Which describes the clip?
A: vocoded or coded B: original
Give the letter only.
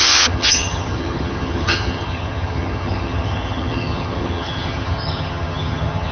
A